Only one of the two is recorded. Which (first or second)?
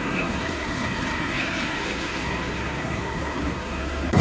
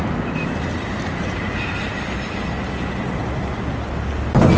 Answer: second